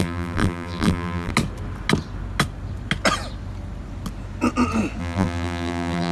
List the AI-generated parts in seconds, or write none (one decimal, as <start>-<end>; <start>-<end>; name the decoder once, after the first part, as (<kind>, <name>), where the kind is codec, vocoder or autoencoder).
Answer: 0.0-1.3 (vocoder, BigVGAN v2); 5.0-6.1